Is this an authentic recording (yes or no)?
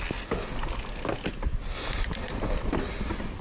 yes